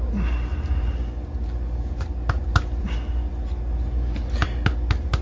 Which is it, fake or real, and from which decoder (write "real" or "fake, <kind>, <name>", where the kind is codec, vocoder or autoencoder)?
real